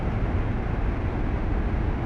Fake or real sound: real